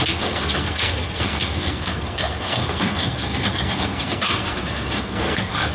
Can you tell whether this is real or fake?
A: fake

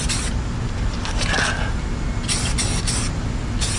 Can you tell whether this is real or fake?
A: real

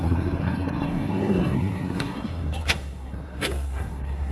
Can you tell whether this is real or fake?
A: fake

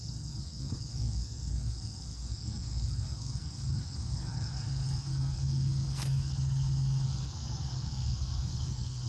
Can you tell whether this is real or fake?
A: fake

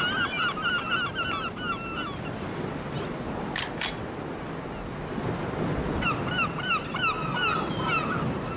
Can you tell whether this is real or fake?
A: real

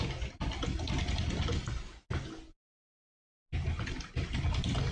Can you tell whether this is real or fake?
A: real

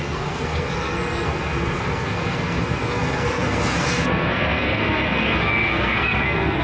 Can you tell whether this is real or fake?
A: fake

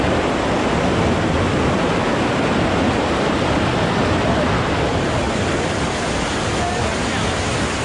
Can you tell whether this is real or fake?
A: real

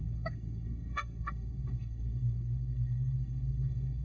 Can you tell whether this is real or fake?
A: fake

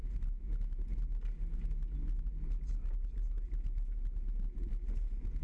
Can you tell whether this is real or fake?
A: real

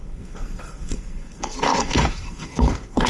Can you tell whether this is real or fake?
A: fake